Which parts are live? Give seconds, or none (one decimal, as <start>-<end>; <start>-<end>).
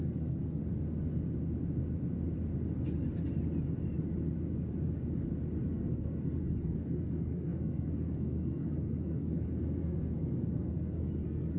0.6-5.7